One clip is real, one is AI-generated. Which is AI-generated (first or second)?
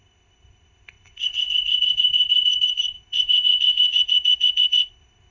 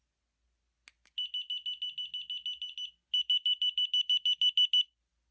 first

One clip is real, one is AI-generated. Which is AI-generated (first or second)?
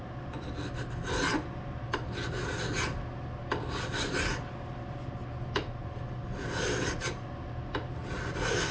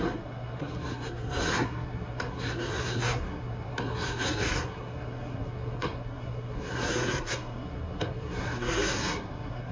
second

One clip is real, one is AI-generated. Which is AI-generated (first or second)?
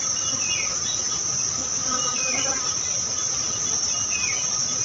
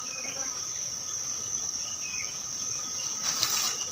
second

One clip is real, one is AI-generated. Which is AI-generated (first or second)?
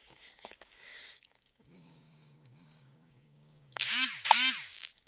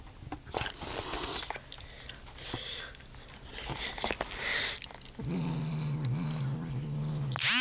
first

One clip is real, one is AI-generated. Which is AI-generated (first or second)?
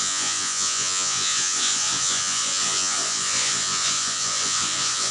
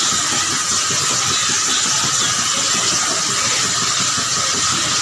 first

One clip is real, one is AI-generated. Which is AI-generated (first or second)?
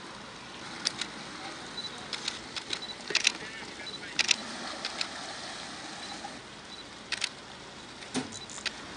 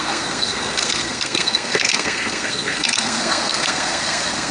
second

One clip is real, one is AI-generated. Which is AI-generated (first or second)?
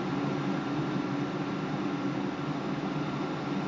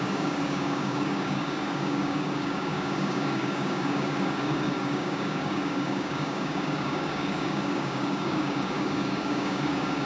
second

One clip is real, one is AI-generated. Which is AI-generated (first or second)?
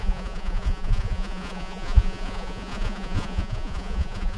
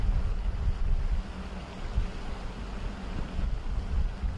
first